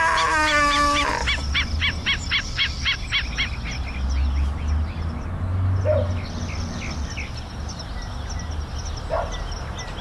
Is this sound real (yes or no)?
yes